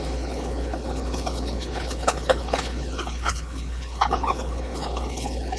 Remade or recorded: remade